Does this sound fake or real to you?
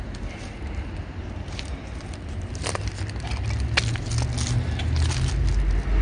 real